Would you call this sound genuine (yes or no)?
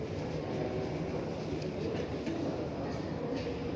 yes